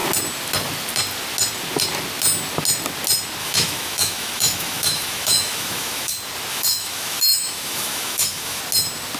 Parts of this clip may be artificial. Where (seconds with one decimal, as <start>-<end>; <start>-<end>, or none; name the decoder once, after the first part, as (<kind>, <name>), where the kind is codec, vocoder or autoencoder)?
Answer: 3.4-6.1 (autoencoder, DAC-VAE); 6.5-8.6